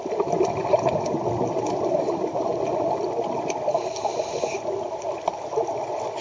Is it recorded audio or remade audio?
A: recorded